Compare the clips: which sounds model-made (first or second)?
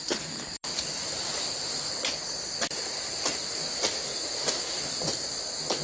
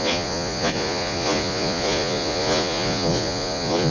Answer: second